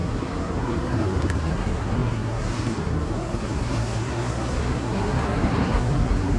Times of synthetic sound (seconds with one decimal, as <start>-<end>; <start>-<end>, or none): 0.0-6.4